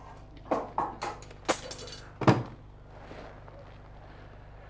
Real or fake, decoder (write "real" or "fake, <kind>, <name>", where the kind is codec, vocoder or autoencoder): real